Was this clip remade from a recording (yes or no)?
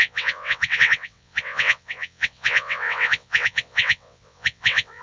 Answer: yes